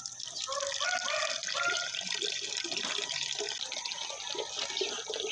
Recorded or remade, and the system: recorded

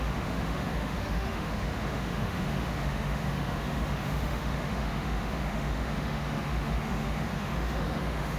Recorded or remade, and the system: remade, autoencoder, DAC-VAE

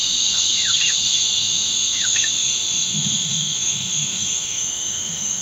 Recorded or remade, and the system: remade, autoencoder, DAC-VAE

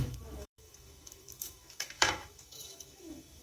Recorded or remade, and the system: remade, autoencoder, DAC-VAE